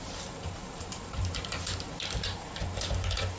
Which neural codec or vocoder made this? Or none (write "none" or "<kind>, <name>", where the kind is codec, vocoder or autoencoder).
vocoder, BigVGAN v2